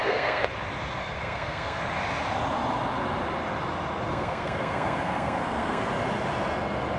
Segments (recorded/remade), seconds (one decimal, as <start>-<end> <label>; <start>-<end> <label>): 0.0-0.5 remade; 0.5-1.0 recorded; 1.0-1.8 remade; 1.8-4.1 recorded; 4.1-5.9 remade; 5.9-7.0 recorded

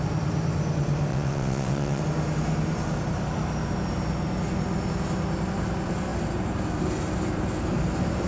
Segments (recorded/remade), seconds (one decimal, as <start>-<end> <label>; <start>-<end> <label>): 0.0-1.1 recorded; 1.1-2.0 remade; 2.0-8.3 recorded

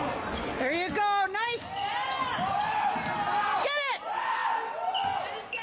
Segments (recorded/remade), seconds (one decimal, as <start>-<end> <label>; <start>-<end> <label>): 0.0-5.6 recorded

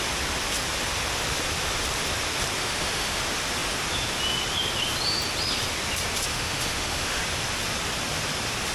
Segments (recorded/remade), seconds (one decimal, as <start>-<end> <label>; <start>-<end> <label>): 0.0-2.6 recorded; 2.6-3.2 remade; 3.2-6.3 recorded; 6.3-7.2 remade; 7.2-8.7 recorded

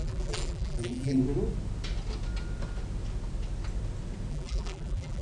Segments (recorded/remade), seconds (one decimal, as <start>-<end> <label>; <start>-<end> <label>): 0.0-1.2 remade; 1.2-4.3 recorded; 4.3-5.2 remade

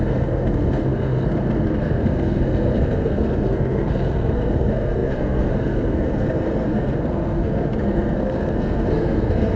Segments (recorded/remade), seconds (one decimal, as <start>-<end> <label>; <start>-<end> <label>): 0.0-9.6 remade

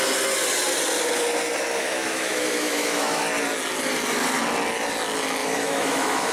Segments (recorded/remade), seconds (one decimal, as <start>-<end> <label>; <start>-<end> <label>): 0.0-1.8 recorded; 1.8-3.2 remade; 3.2-5.4 recorded; 5.4-6.3 remade